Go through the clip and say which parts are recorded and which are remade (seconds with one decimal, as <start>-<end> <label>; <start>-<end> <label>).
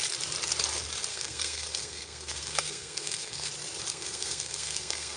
0.0-1.1 recorded; 1.1-3.5 remade; 3.5-3.9 recorded; 3.9-5.2 remade